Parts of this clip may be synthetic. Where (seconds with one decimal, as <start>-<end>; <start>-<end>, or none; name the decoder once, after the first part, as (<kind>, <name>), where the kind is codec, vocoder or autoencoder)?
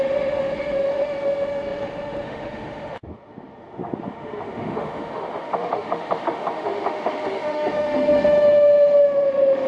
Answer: 0.0-9.7 (autoencoder, DAC-VAE)